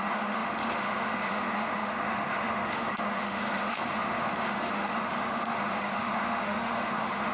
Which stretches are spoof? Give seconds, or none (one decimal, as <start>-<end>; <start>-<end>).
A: 0.0-7.3